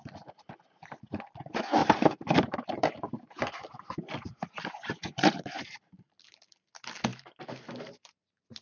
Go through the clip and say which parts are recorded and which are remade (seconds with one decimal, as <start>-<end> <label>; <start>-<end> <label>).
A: 0.0-1.8 recorded; 1.8-4.6 remade; 4.6-5.0 recorded; 5.0-5.9 remade; 5.9-7.1 recorded; 7.1-8.0 remade; 8.0-8.6 recorded